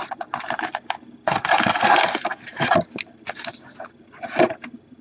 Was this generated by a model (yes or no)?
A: no